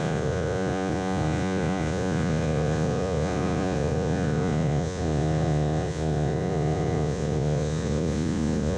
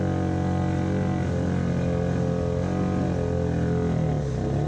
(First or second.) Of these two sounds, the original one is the second